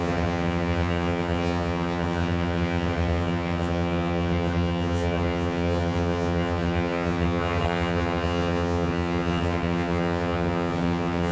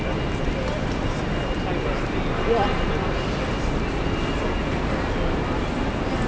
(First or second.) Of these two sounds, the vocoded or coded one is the first